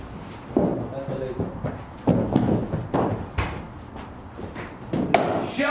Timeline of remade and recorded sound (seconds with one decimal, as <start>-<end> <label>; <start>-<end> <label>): 0.0-5.7 recorded